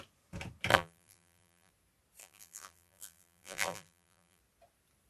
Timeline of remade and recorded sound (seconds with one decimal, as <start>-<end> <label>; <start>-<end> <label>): 0.0-0.7 recorded; 0.7-1.7 remade; 1.7-2.2 recorded; 2.2-4.4 remade; 4.4-5.1 recorded